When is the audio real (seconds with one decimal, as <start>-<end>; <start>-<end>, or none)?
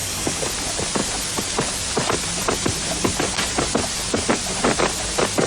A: 0.5-5.5